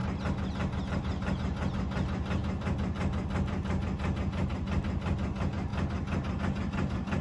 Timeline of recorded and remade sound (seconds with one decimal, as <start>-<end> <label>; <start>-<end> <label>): 0.0-7.2 recorded